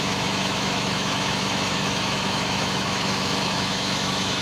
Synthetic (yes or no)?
yes